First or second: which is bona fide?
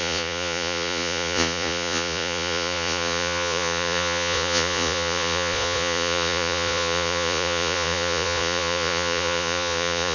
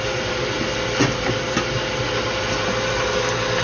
second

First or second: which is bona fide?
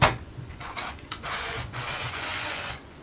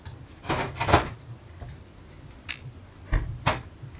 second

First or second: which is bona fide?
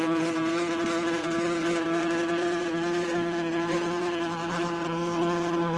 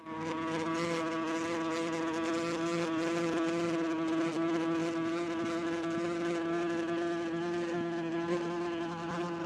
second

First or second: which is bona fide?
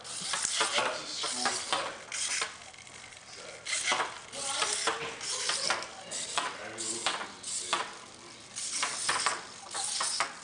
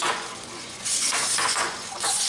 first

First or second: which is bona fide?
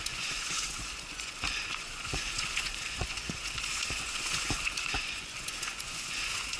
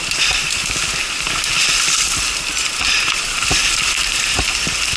second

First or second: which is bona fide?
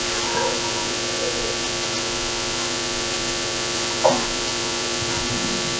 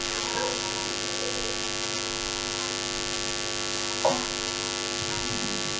second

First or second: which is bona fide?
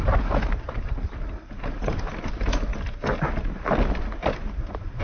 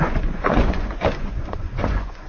first